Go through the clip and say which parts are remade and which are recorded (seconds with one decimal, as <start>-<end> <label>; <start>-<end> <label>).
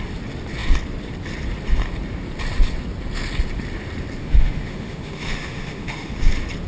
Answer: 0.0-4.2 recorded; 4.2-6.1 remade; 6.1-6.7 recorded